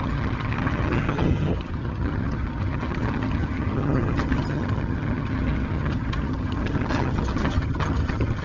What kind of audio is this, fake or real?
fake